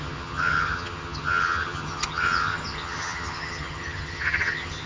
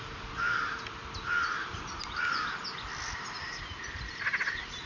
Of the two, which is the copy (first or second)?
first